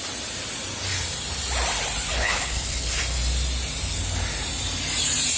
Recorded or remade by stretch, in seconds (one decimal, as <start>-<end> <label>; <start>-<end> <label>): 0.0-2.1 recorded; 2.1-3.0 remade; 3.0-5.4 recorded